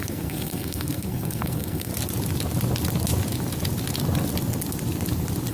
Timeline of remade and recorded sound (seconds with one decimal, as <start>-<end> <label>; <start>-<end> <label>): 0.0-1.9 remade; 1.9-5.5 recorded